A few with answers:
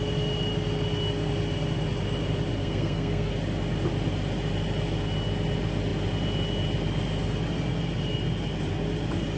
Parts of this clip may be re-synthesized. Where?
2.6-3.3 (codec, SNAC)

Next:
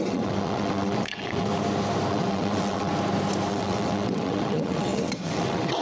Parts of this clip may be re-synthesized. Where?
0.0-1.5 (vocoder, WaveNeXt); 2.1-2.9; 3.5-5.8